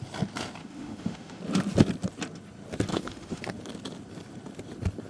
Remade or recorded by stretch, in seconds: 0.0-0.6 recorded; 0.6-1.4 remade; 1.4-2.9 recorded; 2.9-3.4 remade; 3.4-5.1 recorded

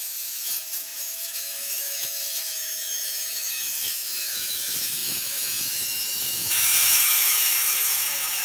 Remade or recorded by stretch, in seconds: 0.0-8.4 remade

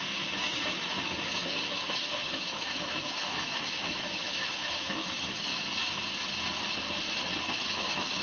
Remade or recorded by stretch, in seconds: 0.0-5.5 remade; 5.5-7.7 recorded; 7.7-8.2 remade

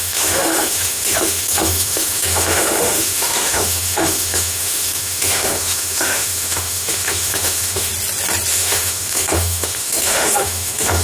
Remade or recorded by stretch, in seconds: 0.0-7.9 remade; 7.9-8.5 recorded; 8.5-11.0 remade

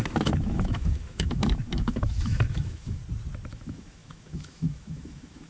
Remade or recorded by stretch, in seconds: 0.0-3.0 remade; 3.0-3.5 recorded; 3.5-5.5 remade

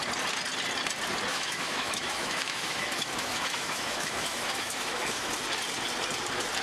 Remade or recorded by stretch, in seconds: 0.0-1.3 recorded; 1.3-5.3 remade; 5.3-6.6 recorded

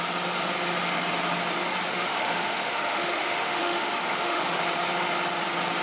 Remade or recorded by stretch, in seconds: 0.0-1.9 recorded; 1.9-4.4 remade; 4.4-5.8 recorded

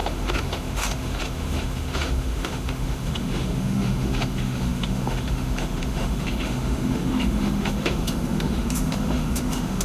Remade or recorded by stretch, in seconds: 0.0-9.8 remade